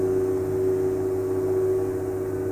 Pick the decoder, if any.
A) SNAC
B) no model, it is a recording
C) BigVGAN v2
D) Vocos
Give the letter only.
B